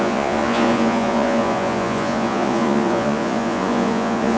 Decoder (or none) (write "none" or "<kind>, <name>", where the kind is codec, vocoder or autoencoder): vocoder, Vocos